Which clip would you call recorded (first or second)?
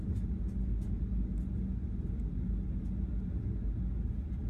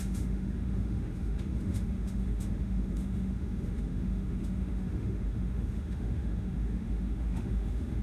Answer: first